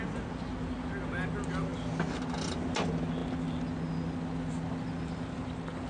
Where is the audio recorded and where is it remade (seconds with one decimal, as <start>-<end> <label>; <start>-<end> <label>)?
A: 0.0-5.9 recorded